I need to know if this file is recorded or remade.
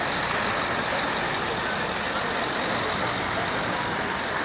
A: recorded